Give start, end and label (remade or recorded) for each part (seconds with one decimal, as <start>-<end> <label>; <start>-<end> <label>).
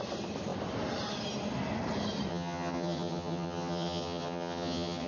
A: 0.0-2.3 recorded; 2.3-5.1 remade